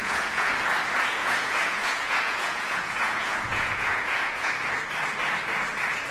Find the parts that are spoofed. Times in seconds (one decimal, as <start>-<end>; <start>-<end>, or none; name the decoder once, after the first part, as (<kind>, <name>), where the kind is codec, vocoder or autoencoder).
0.0-0.5 (vocoder, Vocos); 1.2-4.5